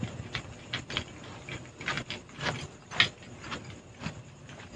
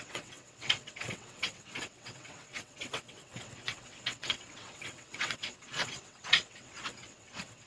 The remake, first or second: second